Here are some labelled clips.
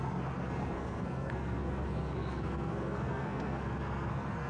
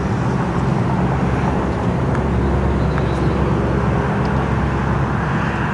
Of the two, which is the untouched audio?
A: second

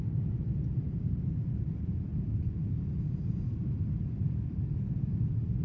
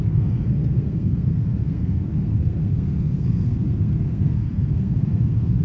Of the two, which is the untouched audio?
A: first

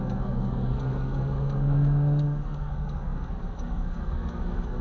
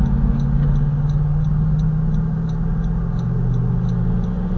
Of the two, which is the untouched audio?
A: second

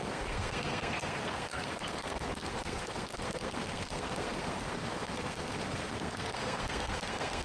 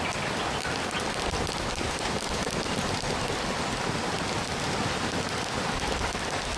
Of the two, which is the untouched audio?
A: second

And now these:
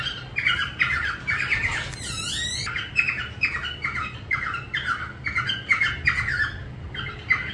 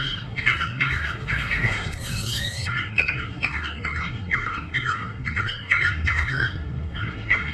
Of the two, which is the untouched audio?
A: first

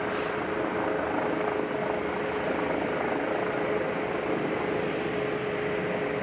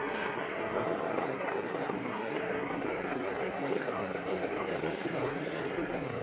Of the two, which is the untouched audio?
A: first